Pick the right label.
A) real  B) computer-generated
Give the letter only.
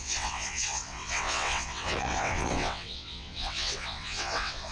B